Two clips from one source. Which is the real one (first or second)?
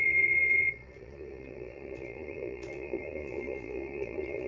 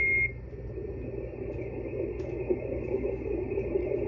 second